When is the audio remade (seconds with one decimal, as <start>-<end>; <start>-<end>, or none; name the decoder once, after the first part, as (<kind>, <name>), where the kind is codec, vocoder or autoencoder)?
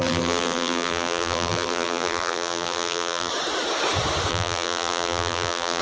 0.0-3.3 (vocoder, BigVGAN v2); 4.3-5.8